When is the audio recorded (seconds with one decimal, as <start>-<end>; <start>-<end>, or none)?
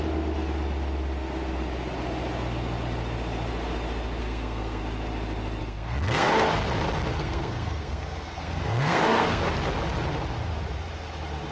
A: 0.0-4.2; 4.8-5.6; 6.3-7.1; 9.4-11.5